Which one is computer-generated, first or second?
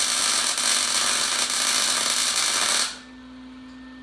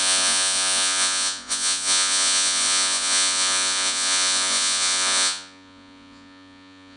second